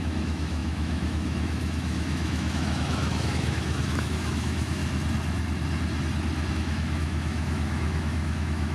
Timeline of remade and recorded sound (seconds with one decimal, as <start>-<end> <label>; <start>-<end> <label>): 0.0-4.8 remade; 4.8-6.5 recorded; 6.5-8.7 remade